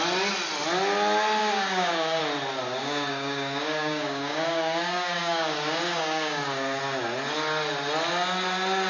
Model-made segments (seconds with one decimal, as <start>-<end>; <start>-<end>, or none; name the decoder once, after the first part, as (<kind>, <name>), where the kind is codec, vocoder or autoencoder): 1.4-2.2 (codec, DAC); 2.8-6.8